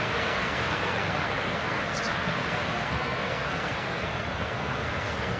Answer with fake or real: fake